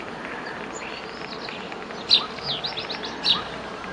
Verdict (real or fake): real